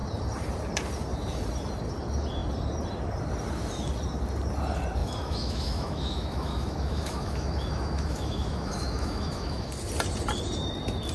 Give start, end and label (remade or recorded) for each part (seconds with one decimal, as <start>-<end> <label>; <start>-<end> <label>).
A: 0.0-5.0 recorded; 5.0-9.7 remade; 9.7-11.1 recorded